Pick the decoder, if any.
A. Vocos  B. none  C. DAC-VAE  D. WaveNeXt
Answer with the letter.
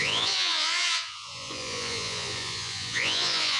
A